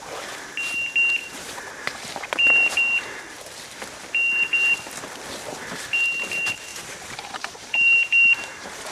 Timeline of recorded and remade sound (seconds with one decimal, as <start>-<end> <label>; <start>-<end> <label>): 0.0-1.2 recorded; 1.2-3.2 remade; 3.2-6.7 recorded; 6.7-8.9 remade